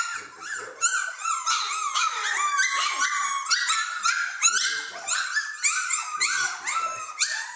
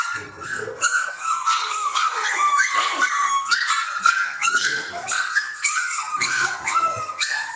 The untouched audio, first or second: first